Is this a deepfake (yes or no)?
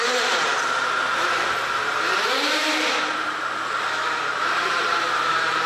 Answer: yes